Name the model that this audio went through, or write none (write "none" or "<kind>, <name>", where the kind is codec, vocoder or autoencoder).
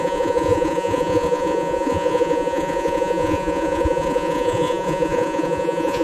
vocoder, Vocos